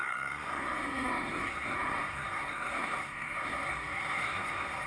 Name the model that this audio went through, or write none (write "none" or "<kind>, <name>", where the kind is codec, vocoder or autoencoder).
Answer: codec, SNAC